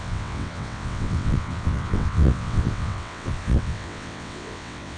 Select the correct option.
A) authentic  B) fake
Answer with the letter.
B